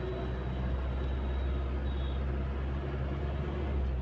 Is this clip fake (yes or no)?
no